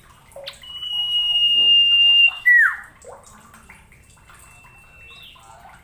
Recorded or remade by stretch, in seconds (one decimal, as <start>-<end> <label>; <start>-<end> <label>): 0.0-1.0 recorded; 1.0-2.9 remade; 2.9-5.8 recorded